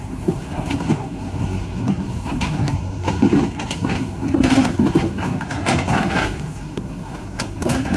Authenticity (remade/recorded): remade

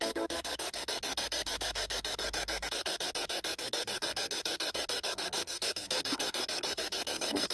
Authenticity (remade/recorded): remade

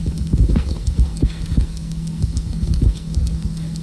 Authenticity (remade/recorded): remade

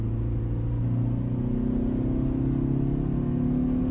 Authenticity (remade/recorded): recorded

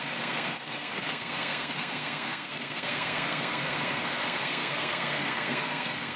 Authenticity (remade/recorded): remade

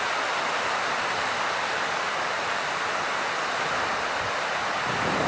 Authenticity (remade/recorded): recorded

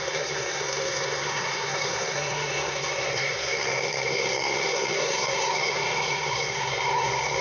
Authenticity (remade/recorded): remade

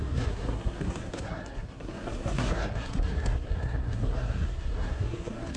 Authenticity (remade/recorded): remade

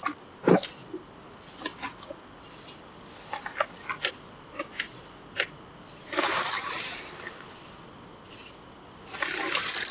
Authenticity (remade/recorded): recorded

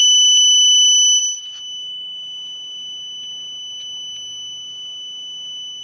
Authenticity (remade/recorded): recorded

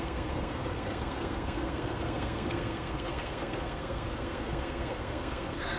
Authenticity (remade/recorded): remade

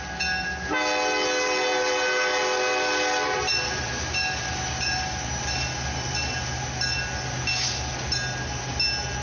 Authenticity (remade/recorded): recorded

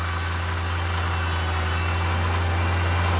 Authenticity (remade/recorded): recorded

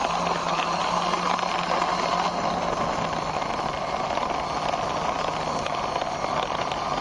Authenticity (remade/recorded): recorded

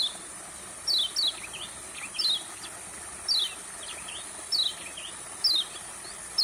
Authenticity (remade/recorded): recorded